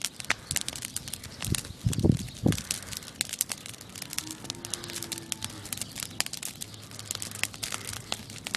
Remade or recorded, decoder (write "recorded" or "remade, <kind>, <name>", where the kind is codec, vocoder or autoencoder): recorded